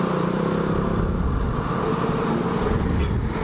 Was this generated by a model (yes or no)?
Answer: no